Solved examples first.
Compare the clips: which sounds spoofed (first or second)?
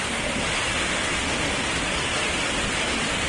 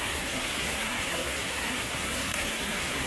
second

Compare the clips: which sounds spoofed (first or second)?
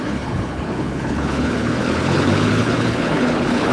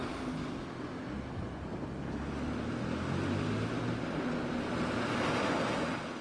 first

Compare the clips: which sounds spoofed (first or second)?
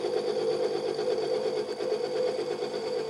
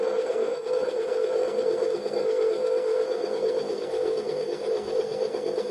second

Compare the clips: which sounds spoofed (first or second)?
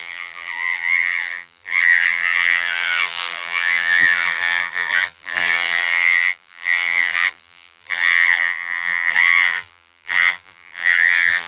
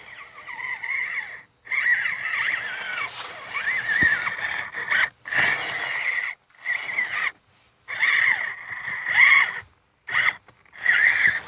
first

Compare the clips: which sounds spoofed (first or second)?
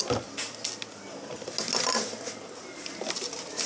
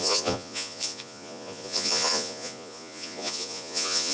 second